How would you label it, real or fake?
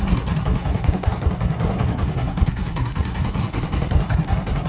fake